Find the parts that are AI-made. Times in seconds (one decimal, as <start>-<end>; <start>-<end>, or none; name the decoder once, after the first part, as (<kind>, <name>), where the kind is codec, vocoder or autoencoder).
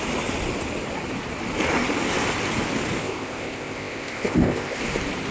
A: 3.0-4.8 (codec, ZipCodec)